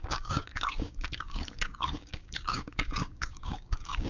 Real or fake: fake